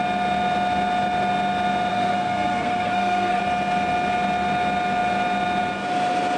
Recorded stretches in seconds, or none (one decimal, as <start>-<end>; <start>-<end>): 0.0-1.9; 3.4-6.4